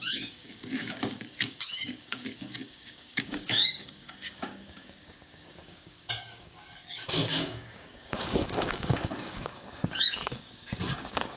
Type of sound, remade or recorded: remade